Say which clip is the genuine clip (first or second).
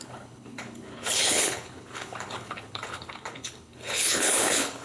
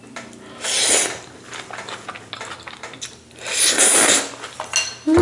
second